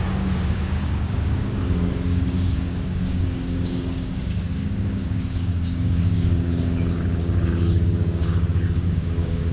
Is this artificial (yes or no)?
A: yes